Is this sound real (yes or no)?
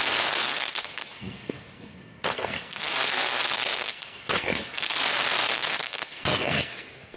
no